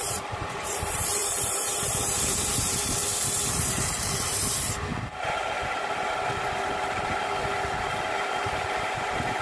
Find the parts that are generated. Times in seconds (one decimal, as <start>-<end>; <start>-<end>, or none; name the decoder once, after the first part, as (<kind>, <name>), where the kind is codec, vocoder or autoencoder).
0.0-3.0 (vocoder, BigVGAN v2); 3.5-4.9; 8.3-9.4